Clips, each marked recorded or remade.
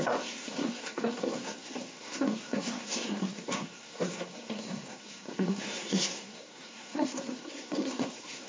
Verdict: remade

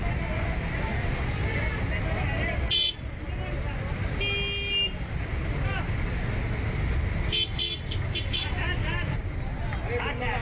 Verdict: recorded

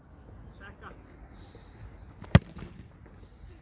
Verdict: recorded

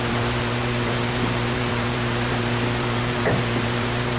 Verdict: remade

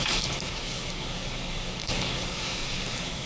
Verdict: remade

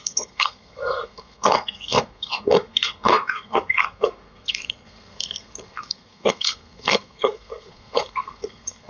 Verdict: remade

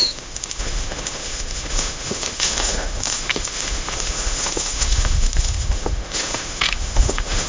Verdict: remade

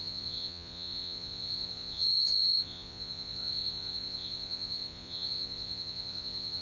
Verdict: remade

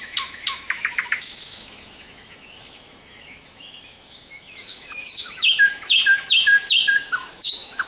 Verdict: remade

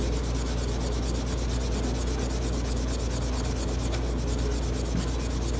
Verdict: recorded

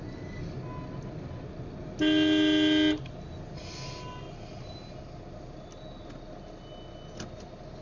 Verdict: recorded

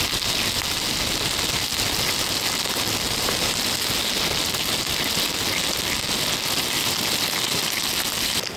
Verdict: recorded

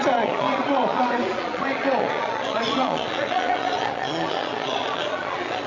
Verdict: remade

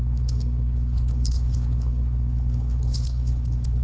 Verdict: remade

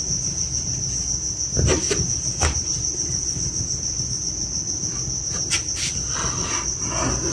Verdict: recorded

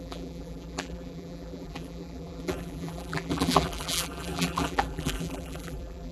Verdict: remade